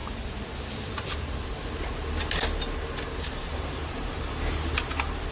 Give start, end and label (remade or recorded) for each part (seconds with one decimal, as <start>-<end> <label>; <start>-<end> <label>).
0.0-3.2 recorded; 3.2-5.3 remade